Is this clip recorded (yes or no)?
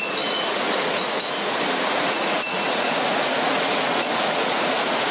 no